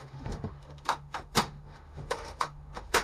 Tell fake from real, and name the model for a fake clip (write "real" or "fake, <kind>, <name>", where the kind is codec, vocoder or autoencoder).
fake, autoencoder, DAC-VAE